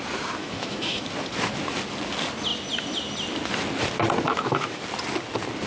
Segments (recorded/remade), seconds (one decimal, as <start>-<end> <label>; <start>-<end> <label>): 0.0-0.4 recorded; 0.4-1.1 remade; 1.1-4.3 recorded; 4.3-4.8 remade; 4.8-5.7 recorded